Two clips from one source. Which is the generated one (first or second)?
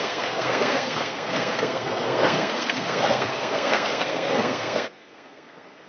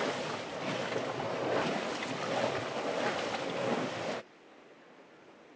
first